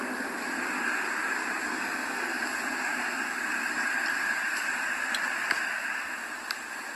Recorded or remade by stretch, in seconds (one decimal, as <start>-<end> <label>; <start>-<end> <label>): 0.0-1.7 recorded; 1.7-2.4 remade; 2.4-7.0 recorded